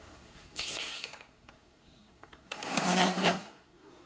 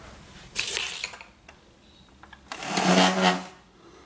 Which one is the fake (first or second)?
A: first